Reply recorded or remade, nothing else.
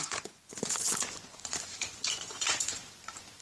remade